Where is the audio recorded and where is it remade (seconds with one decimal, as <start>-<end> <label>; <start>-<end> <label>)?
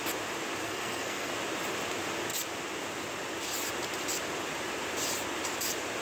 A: 0.0-0.6 recorded; 0.6-1.3 remade; 1.3-6.0 recorded